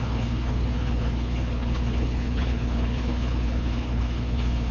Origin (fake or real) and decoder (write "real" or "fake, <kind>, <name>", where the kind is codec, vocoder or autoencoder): fake, codec, HILCodec